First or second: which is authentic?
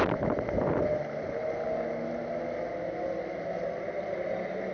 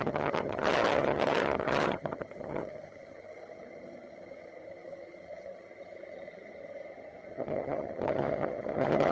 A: first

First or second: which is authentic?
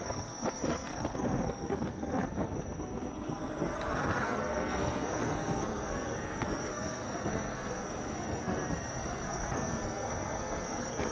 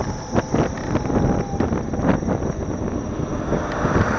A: second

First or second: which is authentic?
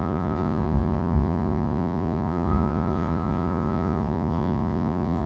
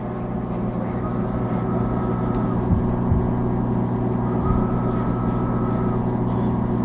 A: second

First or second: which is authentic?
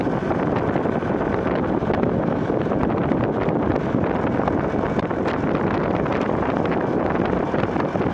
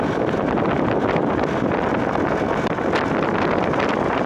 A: second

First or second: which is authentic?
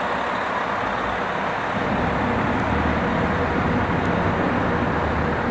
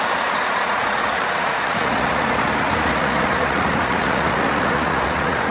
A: first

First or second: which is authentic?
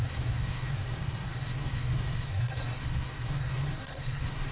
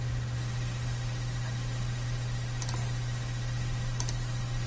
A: second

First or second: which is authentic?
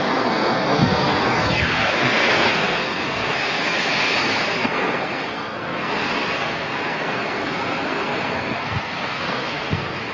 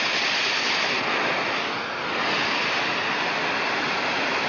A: second